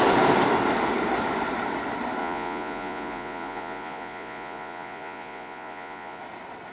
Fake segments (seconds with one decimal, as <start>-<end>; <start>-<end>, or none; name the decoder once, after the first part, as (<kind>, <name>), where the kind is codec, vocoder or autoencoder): 2.2-6.2 (vocoder, Vocos)